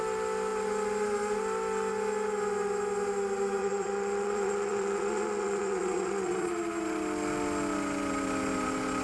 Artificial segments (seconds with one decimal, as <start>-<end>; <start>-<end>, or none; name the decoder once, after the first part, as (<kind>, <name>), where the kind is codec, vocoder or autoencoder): 3.6-6.5 (vocoder, Vocos)